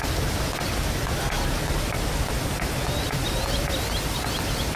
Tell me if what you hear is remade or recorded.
recorded